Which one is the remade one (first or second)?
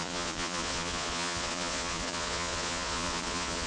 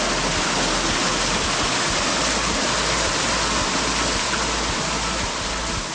first